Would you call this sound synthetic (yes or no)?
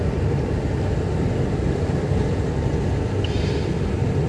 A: no